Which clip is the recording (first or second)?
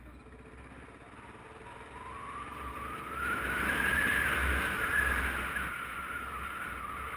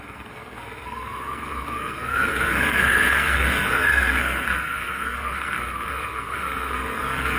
first